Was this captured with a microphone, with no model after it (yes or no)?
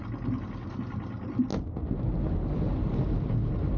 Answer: yes